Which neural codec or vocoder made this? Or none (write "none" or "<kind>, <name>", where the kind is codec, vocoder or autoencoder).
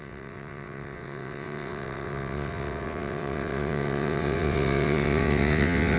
vocoder, WaveNeXt